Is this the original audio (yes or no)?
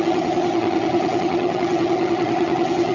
no